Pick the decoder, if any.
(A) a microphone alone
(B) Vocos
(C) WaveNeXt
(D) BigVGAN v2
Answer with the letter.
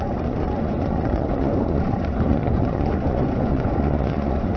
B